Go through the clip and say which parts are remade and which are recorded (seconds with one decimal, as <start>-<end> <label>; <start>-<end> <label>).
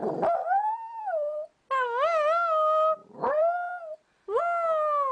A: 0.0-1.0 remade; 1.0-3.0 recorded; 3.0-4.4 remade; 4.4-5.1 recorded